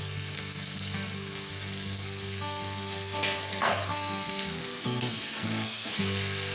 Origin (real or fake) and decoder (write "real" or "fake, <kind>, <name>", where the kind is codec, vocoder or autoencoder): fake, codec, SNAC